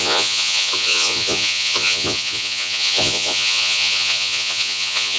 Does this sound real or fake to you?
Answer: fake